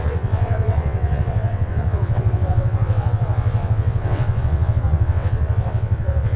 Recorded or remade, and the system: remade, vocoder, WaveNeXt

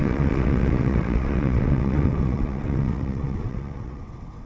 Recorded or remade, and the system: remade, vocoder, WaveNeXt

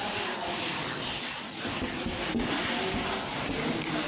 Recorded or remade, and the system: recorded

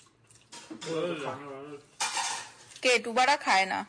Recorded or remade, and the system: recorded